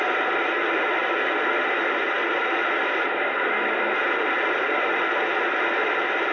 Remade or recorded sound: recorded